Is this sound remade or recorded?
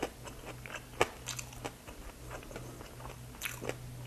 recorded